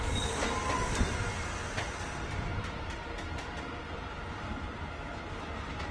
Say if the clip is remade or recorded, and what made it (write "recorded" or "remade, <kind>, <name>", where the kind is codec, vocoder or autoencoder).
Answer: recorded